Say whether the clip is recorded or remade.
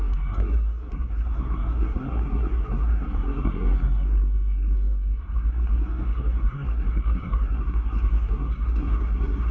remade